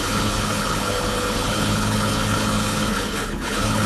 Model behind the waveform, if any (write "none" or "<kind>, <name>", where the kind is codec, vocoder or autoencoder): codec, HILCodec